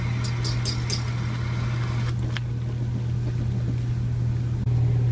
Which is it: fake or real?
real